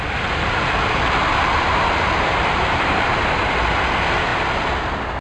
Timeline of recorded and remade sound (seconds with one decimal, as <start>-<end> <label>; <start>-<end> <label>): 0.0-1.3 recorded; 1.3-3.2 remade; 3.2-5.2 recorded